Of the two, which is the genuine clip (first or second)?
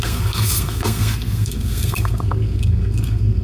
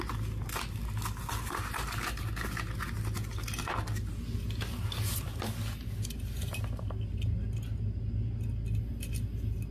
second